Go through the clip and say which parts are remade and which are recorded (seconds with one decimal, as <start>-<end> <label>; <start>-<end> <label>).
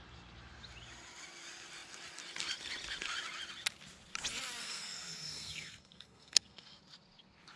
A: 0.0-4.6 recorded; 4.6-6.8 remade; 6.8-7.6 recorded